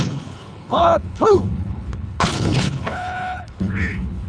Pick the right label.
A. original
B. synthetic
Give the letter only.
B